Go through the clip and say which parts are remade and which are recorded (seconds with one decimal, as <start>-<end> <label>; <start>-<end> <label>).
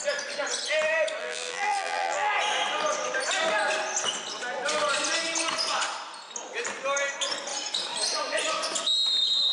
0.0-1.2 recorded; 1.2-2.3 remade; 2.3-9.5 recorded